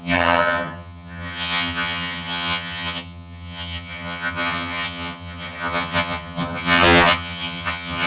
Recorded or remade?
remade